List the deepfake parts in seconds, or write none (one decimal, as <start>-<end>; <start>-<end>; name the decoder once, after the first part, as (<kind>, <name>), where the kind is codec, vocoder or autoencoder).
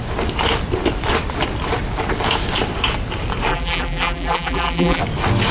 3.5-5.0 (vocoder, BigVGAN v2)